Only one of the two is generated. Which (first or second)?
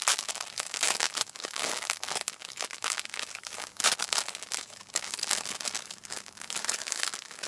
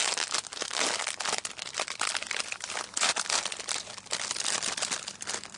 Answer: first